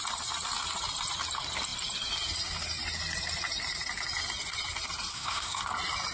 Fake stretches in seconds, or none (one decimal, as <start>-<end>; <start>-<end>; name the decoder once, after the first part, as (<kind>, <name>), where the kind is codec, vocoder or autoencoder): 5.1-5.6 (codec, SNAC)

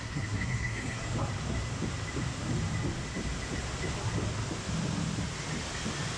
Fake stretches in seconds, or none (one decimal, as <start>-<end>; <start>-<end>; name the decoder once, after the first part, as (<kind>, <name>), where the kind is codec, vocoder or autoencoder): 0.0-1.0 (codec, SNAC)

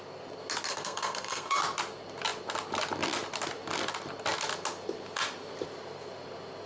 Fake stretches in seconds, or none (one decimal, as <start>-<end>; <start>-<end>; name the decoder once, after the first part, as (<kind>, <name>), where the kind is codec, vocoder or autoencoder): 0.7-1.6 (codec, SNAC)

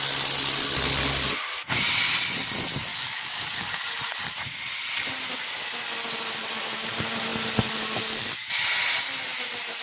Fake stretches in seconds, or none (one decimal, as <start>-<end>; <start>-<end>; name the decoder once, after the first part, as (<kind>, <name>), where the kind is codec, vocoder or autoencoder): 2.9-3.8 (codec, DAC)

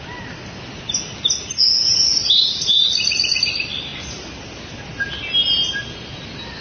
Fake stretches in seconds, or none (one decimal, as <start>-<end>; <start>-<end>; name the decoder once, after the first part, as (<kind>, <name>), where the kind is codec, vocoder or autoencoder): 2.1-3.4 (vocoder, BigVGAN v2)

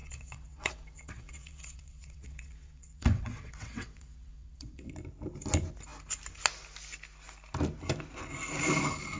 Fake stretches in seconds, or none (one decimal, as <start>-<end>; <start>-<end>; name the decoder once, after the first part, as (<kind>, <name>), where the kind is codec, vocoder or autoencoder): 0.0-4.9 (vocoder, WaveNeXt)